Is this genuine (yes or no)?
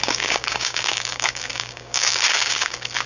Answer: no